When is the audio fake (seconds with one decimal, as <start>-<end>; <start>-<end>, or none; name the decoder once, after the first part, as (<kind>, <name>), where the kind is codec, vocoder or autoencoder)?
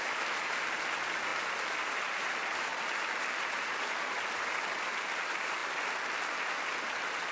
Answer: none